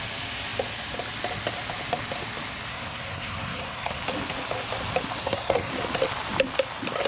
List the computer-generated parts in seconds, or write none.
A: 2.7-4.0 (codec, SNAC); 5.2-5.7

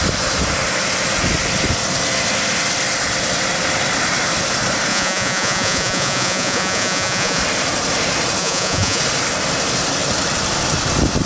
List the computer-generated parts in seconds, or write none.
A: 4.9-7.4 (vocoder, Vocos); 8.4-9.0

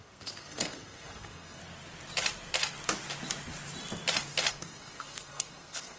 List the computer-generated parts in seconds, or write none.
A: 0.0-1.6 (codec, SNAC); 4.5-6.0

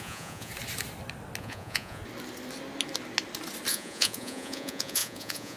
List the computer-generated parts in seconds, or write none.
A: 0.0-0.5 (vocoder, Vocos); 1.4-2.0; 3.7-5.6

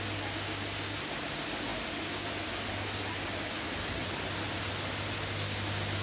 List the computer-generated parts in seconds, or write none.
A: none